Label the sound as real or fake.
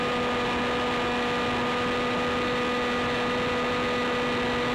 real